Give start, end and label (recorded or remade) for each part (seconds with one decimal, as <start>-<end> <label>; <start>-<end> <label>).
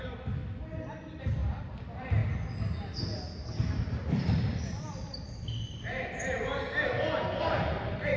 0.0-0.4 remade; 0.4-1.2 recorded; 1.2-2.2 remade; 2.2-3.4 recorded; 3.4-6.5 remade; 6.5-7.4 recorded; 7.4-8.2 remade